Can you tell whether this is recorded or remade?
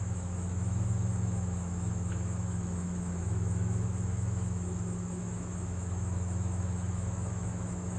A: remade